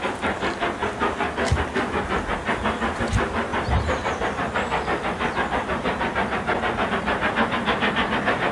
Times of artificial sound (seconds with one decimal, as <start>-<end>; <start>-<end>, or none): none